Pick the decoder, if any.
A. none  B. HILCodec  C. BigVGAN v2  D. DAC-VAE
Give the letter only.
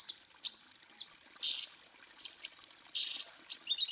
A